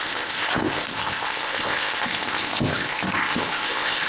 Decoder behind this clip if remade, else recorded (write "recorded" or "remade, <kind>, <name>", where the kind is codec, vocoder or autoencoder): remade, codec, ZipCodec